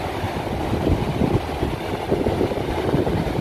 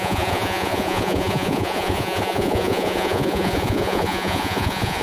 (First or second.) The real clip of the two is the first